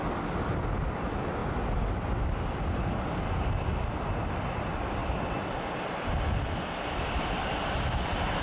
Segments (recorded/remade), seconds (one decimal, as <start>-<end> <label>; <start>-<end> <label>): 0.0-5.0 recorded; 5.0-7.1 remade; 7.1-8.4 recorded